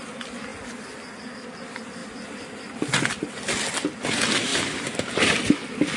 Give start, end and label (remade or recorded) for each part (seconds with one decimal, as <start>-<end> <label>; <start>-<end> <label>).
0.0-6.0 recorded

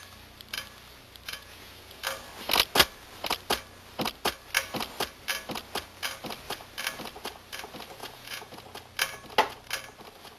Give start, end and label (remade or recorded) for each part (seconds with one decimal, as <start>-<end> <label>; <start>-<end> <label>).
0.0-1.3 recorded; 1.3-2.0 remade; 2.0-8.0 recorded; 8.0-8.6 remade; 8.6-10.4 recorded

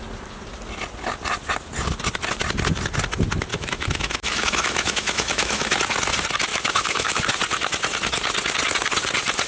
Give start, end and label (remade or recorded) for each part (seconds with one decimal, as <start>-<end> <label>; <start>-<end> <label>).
0.0-3.5 recorded; 3.5-5.8 remade; 5.8-6.5 recorded; 6.5-7.2 remade; 7.2-9.5 recorded

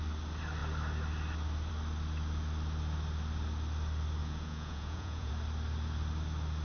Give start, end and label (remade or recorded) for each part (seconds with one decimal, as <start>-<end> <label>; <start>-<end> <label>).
0.0-4.2 recorded; 4.2-5.3 remade; 5.3-6.6 recorded

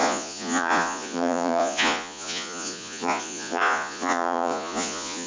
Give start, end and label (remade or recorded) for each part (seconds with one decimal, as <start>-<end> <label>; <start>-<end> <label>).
0.0-5.3 remade

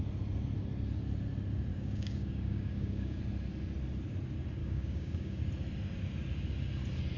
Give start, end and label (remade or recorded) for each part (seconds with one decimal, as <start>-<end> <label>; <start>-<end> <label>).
0.0-1.7 recorded; 1.7-3.2 remade; 3.2-4.6 recorded; 4.6-5.4 remade; 5.4-7.2 recorded

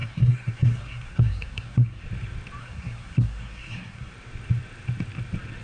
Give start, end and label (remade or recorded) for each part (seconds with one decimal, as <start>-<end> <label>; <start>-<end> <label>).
0.0-2.0 remade; 2.0-2.6 recorded; 2.6-4.1 remade; 4.1-5.6 recorded

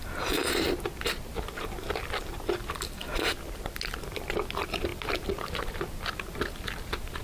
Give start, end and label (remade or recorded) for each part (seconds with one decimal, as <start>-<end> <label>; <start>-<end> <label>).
0.0-0.4 remade; 0.4-1.3 recorded; 1.3-7.2 remade